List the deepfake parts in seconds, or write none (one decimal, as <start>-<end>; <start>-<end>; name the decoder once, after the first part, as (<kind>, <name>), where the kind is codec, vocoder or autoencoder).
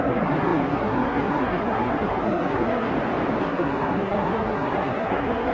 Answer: 0.0-2.9 (codec, SNAC); 3.4-5.5